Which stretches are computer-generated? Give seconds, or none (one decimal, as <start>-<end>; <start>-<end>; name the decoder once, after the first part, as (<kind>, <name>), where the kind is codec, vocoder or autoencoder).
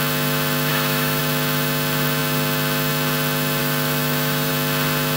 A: 0.7-1.2 (autoencoder, DAC-VAE); 3.6-4.5